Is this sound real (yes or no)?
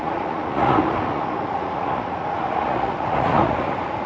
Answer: no